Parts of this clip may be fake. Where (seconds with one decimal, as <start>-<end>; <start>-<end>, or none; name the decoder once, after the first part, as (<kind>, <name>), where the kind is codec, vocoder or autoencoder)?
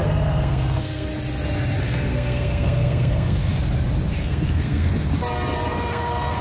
0.0-1.1 (codec, SNAC); 1.8-3.5; 4.2-4.9; 5.7-6.4